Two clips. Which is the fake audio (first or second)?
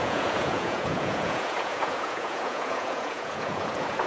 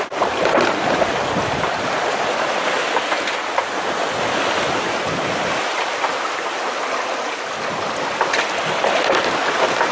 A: first